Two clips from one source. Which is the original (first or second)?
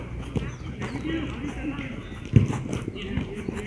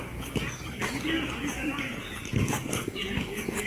first